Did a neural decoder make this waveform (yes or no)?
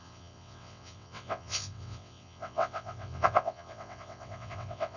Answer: yes